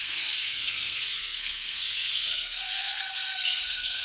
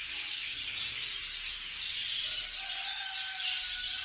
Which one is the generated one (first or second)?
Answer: first